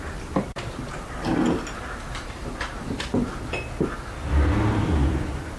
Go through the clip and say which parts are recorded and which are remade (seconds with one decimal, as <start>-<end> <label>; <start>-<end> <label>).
0.0-1.4 remade; 1.4-4.8 recorded; 4.8-5.6 remade